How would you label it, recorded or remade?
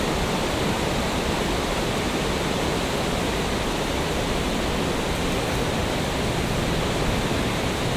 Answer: recorded